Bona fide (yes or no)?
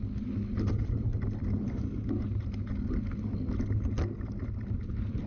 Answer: yes